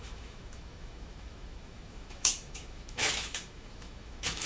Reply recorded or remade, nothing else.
remade